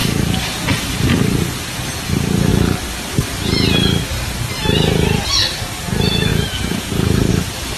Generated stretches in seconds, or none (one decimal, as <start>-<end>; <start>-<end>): 6.3-7.3